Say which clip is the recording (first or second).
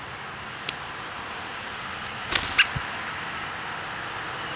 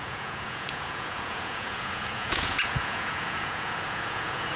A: first